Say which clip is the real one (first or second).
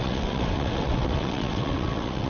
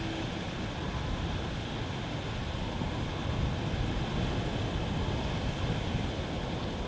second